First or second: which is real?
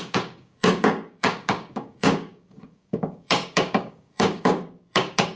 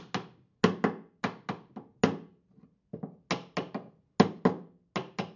second